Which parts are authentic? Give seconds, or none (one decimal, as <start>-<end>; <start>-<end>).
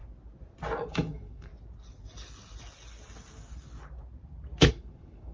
0.0-0.9; 1.5-4.7